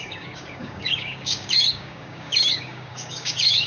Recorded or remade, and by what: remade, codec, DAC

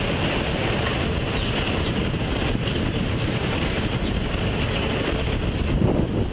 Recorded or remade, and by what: recorded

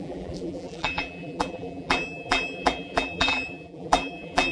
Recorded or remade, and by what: remade, vocoder, BigVGAN v2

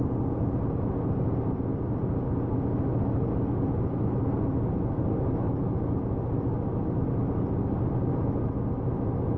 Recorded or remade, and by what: recorded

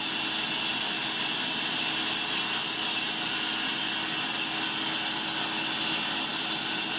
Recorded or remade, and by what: recorded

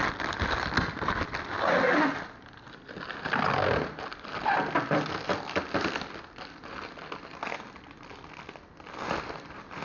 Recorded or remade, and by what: recorded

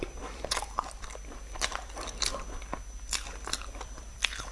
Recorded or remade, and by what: remade, vocoder, BigVGAN v2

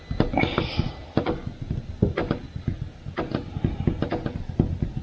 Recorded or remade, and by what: recorded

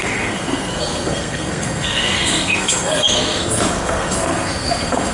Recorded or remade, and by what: remade, codec, SNAC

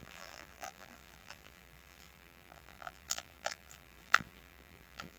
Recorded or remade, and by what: remade, vocoder, BigVGAN v2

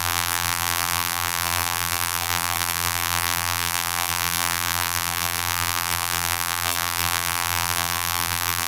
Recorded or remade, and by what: remade, vocoder, BigVGAN v2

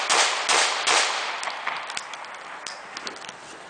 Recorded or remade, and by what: recorded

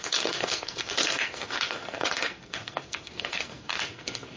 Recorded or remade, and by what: remade, codec, SNAC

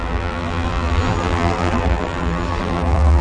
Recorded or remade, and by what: remade, vocoder, BigVGAN v2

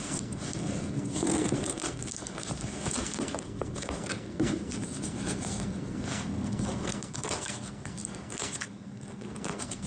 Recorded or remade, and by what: remade, codec, SNAC